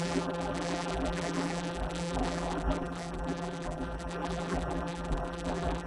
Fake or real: fake